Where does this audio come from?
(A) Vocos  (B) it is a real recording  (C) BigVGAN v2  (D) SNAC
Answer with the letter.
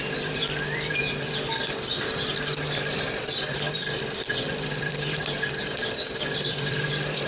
C